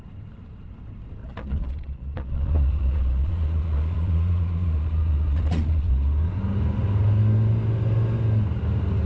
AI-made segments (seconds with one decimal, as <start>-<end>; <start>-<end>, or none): 1.2-5.9